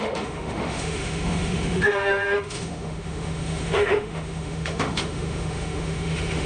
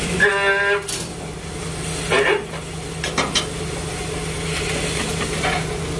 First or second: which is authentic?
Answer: second